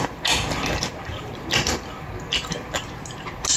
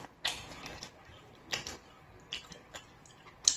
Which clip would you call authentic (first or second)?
second